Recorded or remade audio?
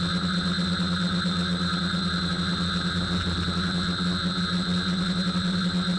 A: recorded